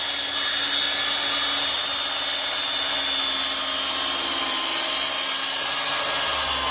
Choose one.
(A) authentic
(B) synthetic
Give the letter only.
A